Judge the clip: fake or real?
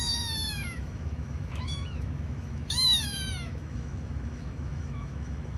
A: fake